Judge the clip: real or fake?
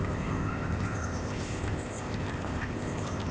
fake